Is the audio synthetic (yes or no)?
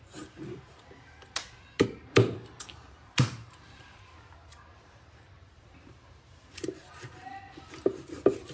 yes